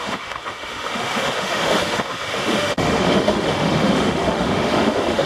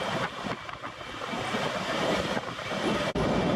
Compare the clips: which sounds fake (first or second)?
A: first